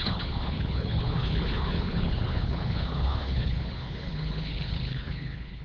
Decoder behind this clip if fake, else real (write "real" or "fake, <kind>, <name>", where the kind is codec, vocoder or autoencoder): fake, codec, HILCodec